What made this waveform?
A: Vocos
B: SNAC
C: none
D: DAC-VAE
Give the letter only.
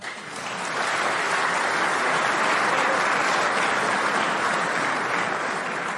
C